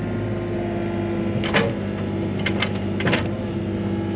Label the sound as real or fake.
real